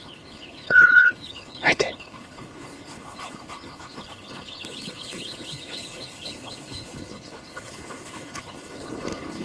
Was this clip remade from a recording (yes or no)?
yes